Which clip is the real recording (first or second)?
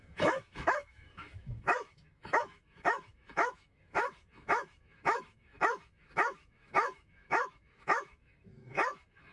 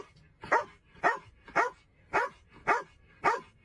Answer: second